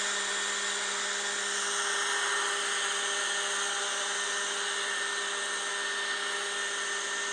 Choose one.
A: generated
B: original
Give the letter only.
B